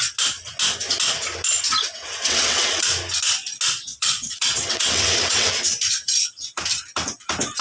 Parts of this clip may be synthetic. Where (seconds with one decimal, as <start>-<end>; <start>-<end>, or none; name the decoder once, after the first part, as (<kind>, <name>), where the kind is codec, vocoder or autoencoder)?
1.9-2.8 (vocoder, WaveNeXt); 3.9-5.5

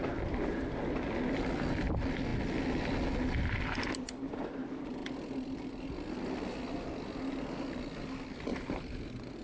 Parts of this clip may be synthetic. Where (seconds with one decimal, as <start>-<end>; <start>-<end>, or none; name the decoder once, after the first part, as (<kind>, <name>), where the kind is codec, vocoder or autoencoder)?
8.5-9.4 (vocoder, BigVGAN v2)

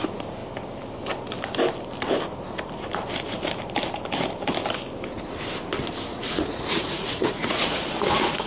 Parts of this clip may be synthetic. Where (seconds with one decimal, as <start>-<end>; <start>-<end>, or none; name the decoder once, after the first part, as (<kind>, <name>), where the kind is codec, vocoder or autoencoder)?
6.1-8.5 (vocoder, Vocos)

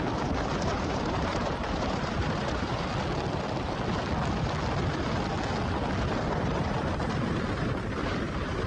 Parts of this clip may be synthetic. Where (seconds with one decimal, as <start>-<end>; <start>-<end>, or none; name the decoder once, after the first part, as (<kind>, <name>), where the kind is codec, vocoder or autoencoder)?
0.0-2.9 (vocoder, BigVGAN v2); 6.3-8.7

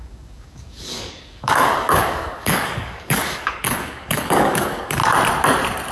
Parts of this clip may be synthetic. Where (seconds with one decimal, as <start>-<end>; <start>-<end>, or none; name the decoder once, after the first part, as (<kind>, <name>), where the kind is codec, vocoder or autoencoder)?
0.0-5.0 (codec, DAC)

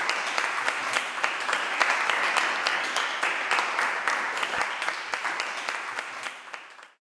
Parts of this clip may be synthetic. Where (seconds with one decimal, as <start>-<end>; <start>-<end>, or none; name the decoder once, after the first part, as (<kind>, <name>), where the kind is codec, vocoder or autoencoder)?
2.7-3.2 (codec, DAC)

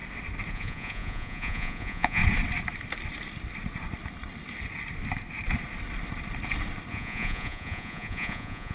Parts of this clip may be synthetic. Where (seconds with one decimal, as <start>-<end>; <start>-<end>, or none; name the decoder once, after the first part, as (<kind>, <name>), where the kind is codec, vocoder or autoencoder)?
0.5-2.2 (vocoder, Vocos); 6.9-8.7